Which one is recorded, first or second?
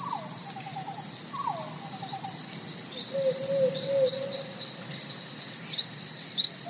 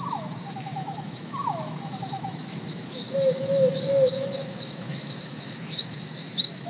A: first